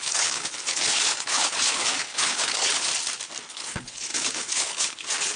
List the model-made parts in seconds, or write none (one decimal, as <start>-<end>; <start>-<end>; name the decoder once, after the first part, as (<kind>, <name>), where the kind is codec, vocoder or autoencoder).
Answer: 0.0-2.9 (codec, HILCodec); 3.5-5.4